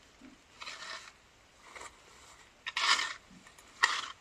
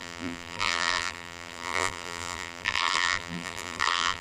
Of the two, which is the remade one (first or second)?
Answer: second